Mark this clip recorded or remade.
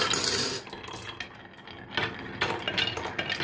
recorded